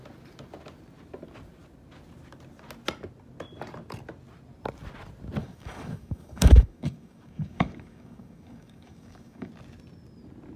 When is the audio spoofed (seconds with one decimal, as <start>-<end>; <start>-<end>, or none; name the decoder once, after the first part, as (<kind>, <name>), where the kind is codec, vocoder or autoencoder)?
5.4-9.5 (codec, DAC)